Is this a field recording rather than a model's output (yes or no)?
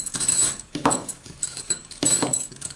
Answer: no